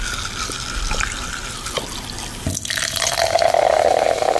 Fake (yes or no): no